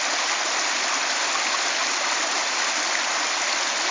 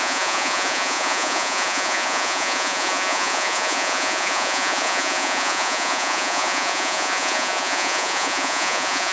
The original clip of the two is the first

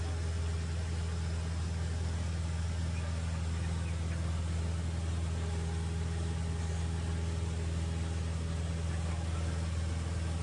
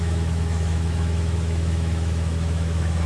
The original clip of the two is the first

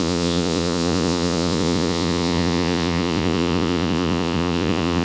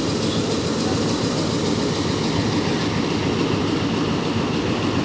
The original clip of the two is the second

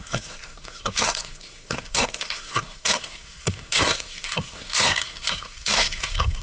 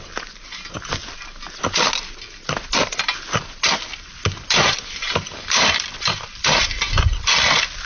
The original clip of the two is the second